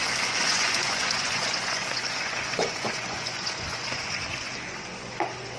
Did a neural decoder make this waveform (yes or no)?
yes